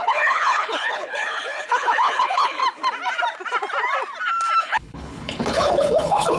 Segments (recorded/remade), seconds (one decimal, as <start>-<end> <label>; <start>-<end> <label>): 0.0-2.6 remade; 2.6-4.6 recorded; 4.6-6.4 remade